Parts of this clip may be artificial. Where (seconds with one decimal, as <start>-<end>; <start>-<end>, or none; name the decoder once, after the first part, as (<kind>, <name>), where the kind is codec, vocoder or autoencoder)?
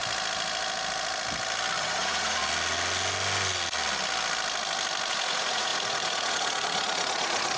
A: 1.8-2.4 (vocoder, Vocos); 5.1-7.6